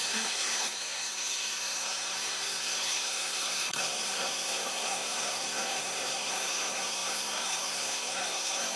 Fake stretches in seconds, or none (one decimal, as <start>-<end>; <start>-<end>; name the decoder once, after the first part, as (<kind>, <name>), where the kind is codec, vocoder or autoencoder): 0.0-8.8 (codec, SNAC)